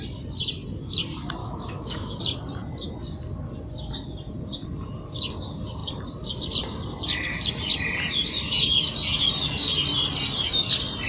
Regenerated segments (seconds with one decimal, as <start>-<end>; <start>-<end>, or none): 1.4-2.2